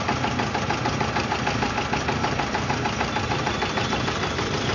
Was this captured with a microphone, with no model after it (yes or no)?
yes